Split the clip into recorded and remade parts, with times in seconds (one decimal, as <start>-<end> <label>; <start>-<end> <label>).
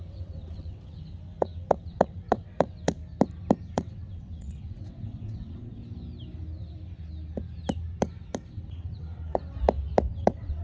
0.0-3.0 remade; 3.0-3.7 recorded; 3.7-5.8 remade; 5.8-8.5 recorded; 8.5-9.4 remade; 9.4-10.1 recorded; 10.1-10.6 remade